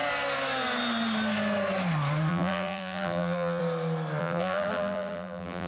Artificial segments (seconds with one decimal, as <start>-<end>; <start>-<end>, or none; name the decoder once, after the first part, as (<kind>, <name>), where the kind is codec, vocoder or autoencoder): 2.3-3.6 (vocoder, BigVGAN v2); 4.2-5.7